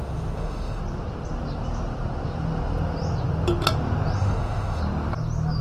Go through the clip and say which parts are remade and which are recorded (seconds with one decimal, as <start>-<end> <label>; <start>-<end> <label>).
0.0-0.8 remade; 0.8-4.2 recorded; 4.2-4.8 remade; 4.8-5.6 recorded